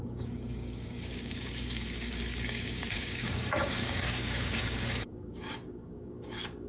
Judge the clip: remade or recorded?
remade